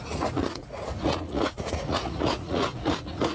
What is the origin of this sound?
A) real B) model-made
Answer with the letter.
B